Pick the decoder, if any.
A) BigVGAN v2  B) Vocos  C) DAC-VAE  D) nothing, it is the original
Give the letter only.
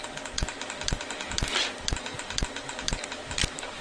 D